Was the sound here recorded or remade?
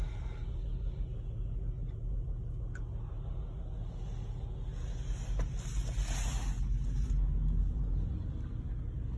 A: recorded